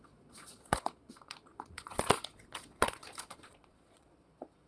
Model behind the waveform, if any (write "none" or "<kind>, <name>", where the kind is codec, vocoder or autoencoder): vocoder, Vocos